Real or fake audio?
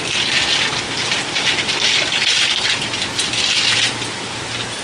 real